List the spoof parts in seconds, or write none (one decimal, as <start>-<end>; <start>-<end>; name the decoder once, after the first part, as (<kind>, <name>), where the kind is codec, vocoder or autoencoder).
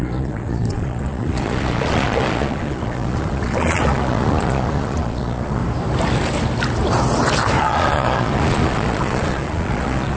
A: 0.0-5.6 (vocoder, Vocos); 7.6-10.2